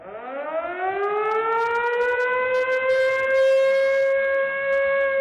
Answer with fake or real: real